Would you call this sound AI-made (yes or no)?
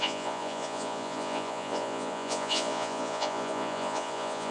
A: yes